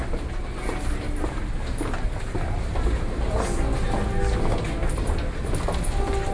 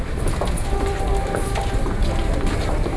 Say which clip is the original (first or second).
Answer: first